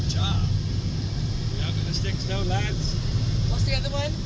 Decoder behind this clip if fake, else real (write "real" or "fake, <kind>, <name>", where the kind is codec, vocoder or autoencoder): real